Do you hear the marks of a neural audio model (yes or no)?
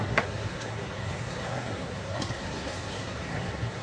yes